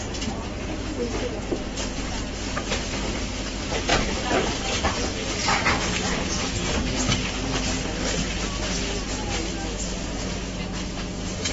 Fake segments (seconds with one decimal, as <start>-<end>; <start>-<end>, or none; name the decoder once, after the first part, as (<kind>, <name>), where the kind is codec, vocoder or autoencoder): none